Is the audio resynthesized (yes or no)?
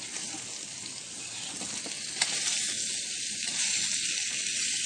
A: no